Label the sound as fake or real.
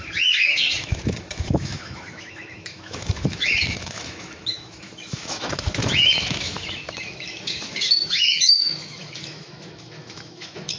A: fake